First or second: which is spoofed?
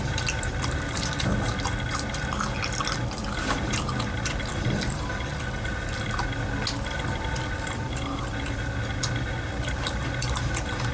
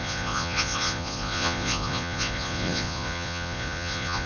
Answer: second